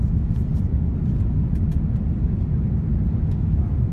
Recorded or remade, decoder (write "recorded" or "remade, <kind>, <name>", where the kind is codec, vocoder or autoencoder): recorded